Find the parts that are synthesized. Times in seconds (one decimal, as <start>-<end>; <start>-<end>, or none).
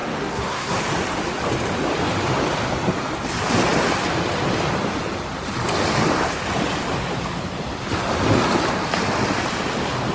0.0-0.8